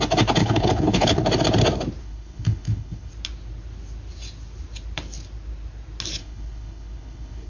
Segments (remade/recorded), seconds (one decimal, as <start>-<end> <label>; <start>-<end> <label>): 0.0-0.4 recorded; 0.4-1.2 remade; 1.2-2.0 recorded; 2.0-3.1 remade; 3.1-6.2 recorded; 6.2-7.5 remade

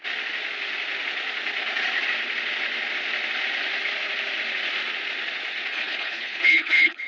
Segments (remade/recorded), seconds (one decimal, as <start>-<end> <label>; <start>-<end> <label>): 0.0-5.7 recorded; 5.7-7.1 remade

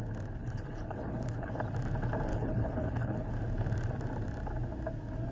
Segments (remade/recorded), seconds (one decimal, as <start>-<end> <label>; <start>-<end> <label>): 0.0-0.4 recorded; 0.4-1.5 remade; 1.5-2.3 recorded; 2.3-3.3 remade; 3.3-5.3 recorded